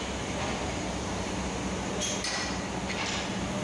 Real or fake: real